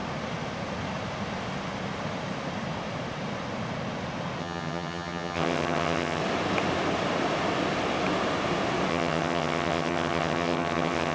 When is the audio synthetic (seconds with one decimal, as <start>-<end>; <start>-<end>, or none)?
4.4-6.2; 8.9-11.1